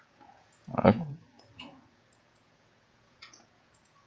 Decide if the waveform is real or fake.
fake